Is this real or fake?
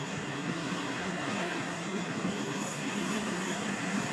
fake